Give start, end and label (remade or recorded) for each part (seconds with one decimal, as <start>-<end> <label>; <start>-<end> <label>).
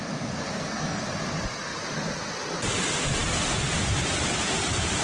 0.0-0.5 recorded; 0.5-1.0 remade; 1.0-5.0 recorded